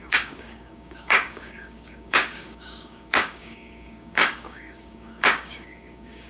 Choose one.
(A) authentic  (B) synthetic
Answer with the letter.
B